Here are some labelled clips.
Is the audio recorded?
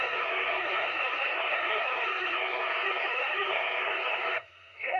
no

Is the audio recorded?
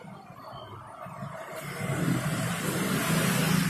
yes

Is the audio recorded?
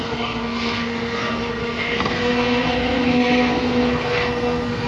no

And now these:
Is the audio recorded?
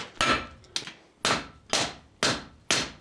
yes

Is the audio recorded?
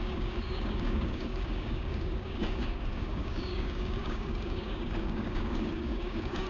no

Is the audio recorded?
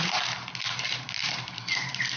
no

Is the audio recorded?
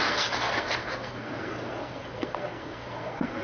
no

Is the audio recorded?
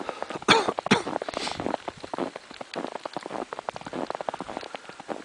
yes